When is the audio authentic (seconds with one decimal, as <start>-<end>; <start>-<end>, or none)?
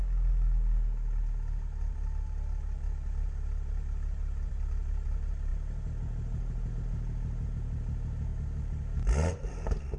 0.0-10.0